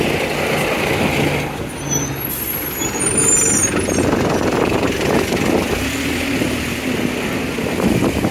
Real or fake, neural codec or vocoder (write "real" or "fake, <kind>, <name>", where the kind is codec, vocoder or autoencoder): real